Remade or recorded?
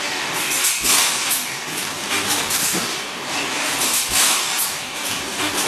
remade